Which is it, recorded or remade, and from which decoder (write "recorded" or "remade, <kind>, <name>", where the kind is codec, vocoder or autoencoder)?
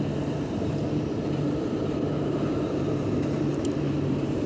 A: remade, vocoder, BigVGAN v2